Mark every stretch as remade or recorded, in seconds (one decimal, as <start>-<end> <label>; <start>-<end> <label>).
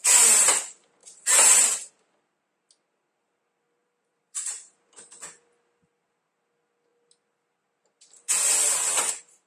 0.0-1.0 recorded; 1.0-1.9 remade; 1.9-3.8 recorded; 3.8-5.0 remade; 5.0-9.5 recorded